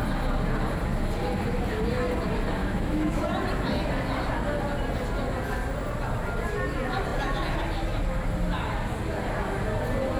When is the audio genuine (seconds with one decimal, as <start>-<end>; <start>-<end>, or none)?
0.0-2.6; 3.2-10.2

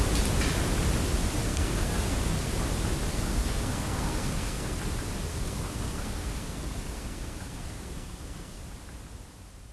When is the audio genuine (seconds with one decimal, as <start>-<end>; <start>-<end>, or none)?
0.0-1.4; 2.5-3.1; 4.8-5.3; 8.6-9.7

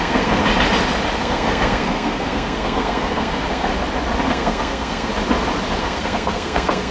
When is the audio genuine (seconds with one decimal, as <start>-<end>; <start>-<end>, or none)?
0.4-1.2; 3.7-4.3; 5.1-5.8

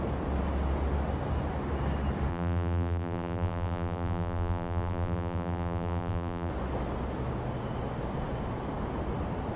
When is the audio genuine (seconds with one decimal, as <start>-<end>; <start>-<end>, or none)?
0.0-2.3; 6.5-9.6

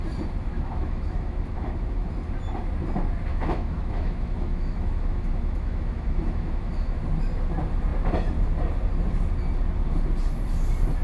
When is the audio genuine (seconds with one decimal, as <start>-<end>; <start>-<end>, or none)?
0.0-0.5; 2.1-3.3; 7.0-11.0

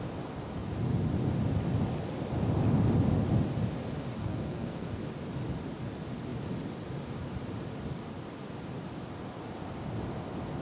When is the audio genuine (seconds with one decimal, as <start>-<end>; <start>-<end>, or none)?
0.0-4.2; 5.0-10.6

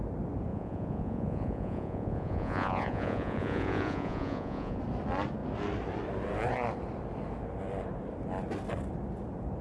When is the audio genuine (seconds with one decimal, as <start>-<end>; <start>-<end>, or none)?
0.0-0.5; 4.8-9.6